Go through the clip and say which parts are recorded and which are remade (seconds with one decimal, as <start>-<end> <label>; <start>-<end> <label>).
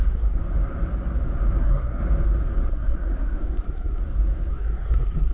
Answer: 0.0-0.4 remade; 0.4-1.6 recorded; 1.6-2.0 remade; 2.0-2.7 recorded; 2.7-4.0 remade; 4.0-4.5 recorded; 4.5-5.3 remade